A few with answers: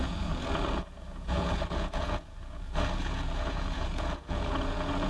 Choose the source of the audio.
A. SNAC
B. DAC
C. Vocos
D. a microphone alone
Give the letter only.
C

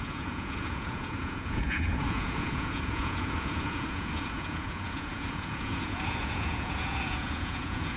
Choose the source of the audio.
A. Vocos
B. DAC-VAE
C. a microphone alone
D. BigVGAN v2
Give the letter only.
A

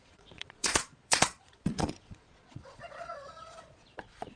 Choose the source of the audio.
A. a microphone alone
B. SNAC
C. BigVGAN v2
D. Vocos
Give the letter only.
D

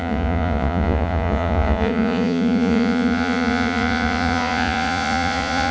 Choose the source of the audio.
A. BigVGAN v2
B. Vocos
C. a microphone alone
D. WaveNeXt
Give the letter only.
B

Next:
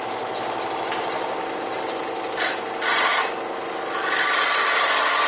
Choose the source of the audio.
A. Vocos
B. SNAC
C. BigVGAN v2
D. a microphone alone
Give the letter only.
D